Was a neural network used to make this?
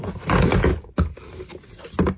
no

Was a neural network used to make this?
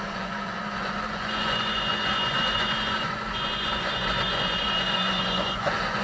yes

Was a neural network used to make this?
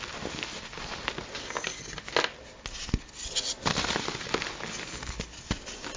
no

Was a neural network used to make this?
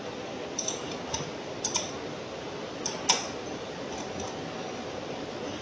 no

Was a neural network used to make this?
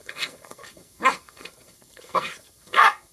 yes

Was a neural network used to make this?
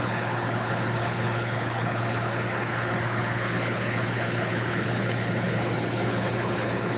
yes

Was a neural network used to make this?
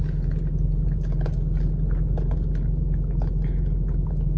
no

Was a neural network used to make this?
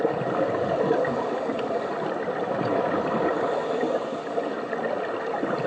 no